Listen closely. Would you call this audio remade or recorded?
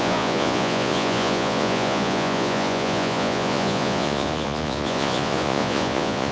remade